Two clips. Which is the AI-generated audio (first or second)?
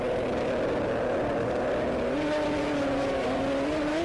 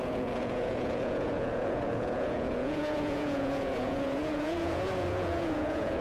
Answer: second